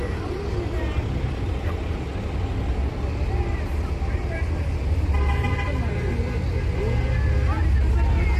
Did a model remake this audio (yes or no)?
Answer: no